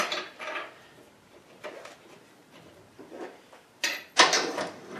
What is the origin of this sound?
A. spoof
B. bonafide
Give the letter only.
A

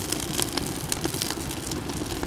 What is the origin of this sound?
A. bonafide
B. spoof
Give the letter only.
A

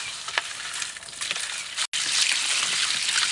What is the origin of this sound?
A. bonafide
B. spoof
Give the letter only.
A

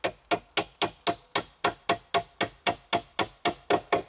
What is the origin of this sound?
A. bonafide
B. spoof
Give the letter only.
A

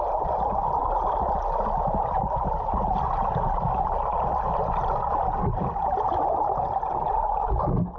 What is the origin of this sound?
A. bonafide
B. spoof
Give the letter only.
A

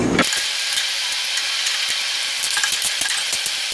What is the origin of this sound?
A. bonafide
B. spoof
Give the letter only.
B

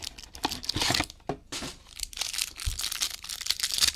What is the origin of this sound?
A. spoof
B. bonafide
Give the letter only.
B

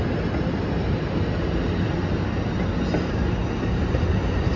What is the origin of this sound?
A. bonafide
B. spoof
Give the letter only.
A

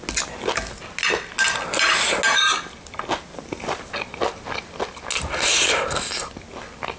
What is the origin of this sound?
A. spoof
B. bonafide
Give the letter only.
B